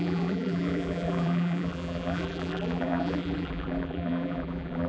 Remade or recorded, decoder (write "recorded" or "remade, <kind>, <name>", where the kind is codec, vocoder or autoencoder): remade, vocoder, BigVGAN v2